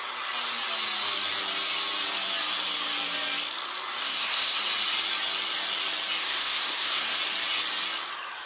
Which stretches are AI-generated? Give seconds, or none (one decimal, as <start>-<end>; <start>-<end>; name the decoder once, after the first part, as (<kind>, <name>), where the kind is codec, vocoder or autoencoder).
4.0-4.6 (codec, SNAC); 6.2-7.2

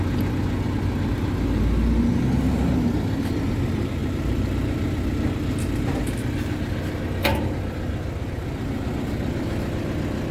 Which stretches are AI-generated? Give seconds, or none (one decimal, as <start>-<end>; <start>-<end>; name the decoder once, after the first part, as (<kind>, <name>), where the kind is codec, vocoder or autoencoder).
none

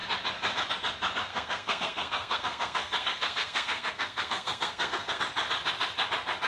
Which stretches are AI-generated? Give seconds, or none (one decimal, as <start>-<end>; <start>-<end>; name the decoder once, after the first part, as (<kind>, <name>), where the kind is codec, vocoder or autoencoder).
1.3-5.2 (codec, SNAC)

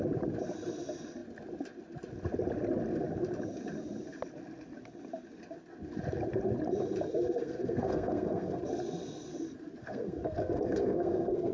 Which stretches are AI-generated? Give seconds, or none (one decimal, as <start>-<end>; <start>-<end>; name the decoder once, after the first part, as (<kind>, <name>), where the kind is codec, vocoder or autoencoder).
7.4-8.6 (codec, SNAC); 9.8-11.5